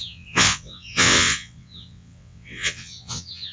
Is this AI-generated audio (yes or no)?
yes